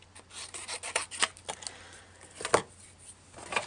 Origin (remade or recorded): recorded